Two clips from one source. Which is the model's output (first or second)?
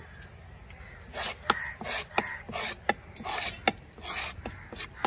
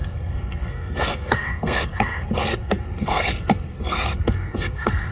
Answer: second